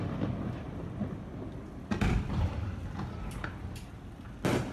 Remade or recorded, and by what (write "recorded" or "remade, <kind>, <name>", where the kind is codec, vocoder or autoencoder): recorded